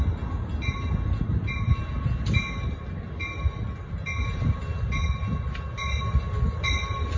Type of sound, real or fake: real